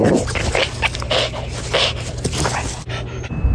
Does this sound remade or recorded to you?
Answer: recorded